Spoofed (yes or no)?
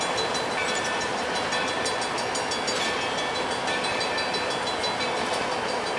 no